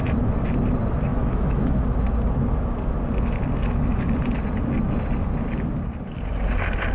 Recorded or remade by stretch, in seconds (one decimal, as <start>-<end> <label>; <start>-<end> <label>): 0.0-1.1 recorded; 1.1-1.8 remade; 1.8-6.9 recorded